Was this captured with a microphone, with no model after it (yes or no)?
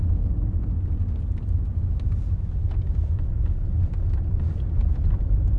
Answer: yes